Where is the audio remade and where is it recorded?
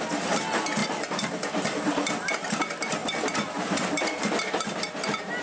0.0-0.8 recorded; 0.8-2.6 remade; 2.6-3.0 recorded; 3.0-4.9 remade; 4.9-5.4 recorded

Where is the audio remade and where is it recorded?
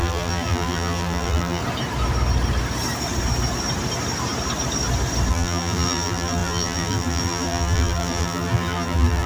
0.0-1.6 remade; 1.6-5.3 recorded; 5.3-9.3 remade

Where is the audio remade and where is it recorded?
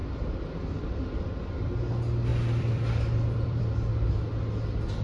0.0-1.0 remade; 1.0-2.3 recorded; 2.3-3.6 remade; 3.6-5.0 recorded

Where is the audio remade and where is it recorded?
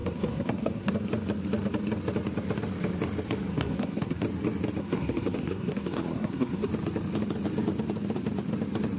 0.0-0.9 remade; 0.9-3.5 recorded; 3.5-4.2 remade; 4.2-4.8 recorded; 4.8-6.7 remade; 6.7-9.0 recorded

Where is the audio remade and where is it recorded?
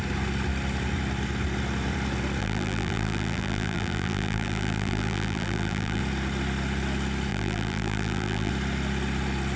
0.0-2.4 recorded; 2.4-6.0 remade; 6.0-7.3 recorded; 7.3-8.5 remade; 8.5-9.6 recorded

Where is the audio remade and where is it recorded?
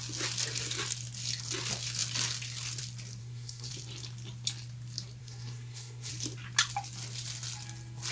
0.0-3.2 recorded; 3.2-3.7 remade; 3.7-5.2 recorded; 5.2-6.1 remade; 6.1-8.1 recorded